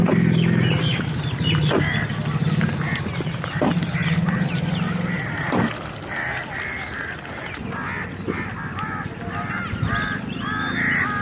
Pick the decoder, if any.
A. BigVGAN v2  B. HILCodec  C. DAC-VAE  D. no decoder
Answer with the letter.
D